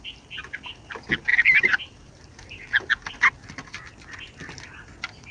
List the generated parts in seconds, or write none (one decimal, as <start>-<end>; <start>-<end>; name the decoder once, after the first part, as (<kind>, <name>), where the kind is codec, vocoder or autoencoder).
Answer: 1.3-3.1 (vocoder, BigVGAN v2)